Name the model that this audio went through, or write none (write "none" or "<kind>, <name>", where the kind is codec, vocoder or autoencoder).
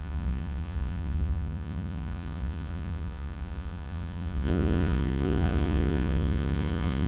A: vocoder, Vocos